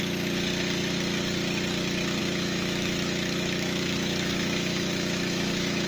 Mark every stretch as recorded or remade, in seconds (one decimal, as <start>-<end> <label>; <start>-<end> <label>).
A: 0.0-2.2 recorded; 2.2-5.9 remade